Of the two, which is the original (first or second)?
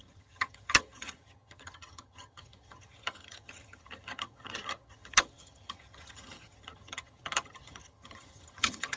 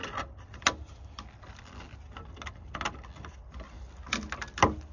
second